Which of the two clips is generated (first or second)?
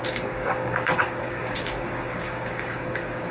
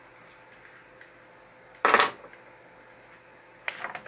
first